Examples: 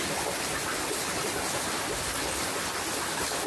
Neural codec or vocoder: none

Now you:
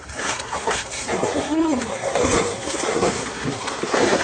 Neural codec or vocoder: codec, SNAC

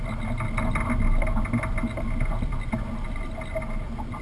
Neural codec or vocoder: none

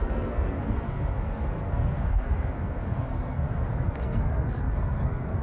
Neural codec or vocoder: codec, SNAC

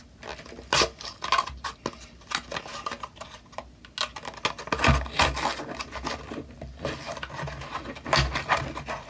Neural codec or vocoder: none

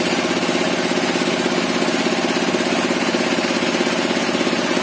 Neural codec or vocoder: none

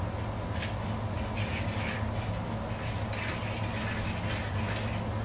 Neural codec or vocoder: none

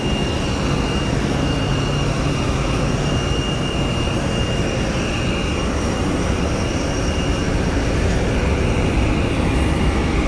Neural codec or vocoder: none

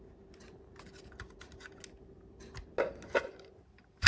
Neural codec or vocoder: none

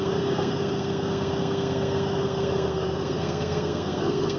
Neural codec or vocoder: codec, SNAC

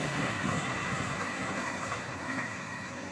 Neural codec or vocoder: codec, SNAC